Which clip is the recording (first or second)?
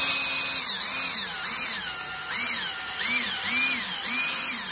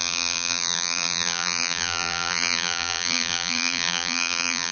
first